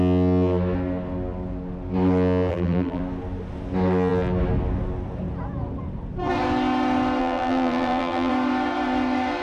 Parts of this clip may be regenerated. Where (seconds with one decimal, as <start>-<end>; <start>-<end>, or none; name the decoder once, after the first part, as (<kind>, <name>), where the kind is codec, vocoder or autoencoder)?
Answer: 2.5-3.0 (vocoder, BigVGAN v2); 7.2-8.3